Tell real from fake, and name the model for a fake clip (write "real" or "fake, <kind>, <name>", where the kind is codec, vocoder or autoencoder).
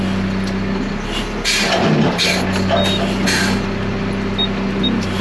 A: real